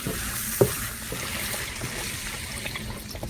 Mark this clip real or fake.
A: fake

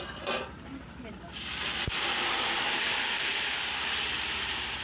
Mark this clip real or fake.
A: fake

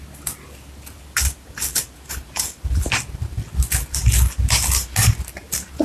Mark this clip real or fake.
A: real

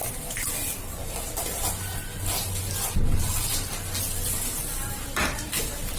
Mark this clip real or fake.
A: real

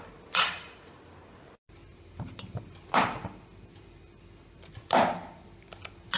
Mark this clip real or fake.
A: real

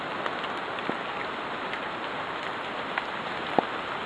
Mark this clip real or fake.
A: real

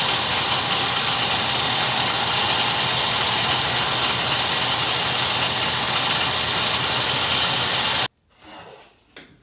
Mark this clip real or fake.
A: real